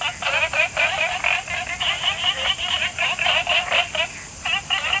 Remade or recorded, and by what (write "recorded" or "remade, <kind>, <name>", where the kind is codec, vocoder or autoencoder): recorded